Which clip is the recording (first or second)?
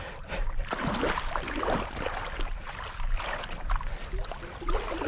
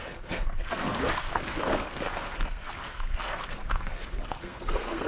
first